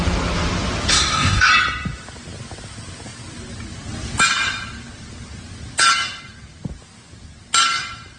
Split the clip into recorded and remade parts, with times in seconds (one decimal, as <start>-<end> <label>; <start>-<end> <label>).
0.0-0.9 recorded; 0.9-1.5 remade; 1.5-8.2 recorded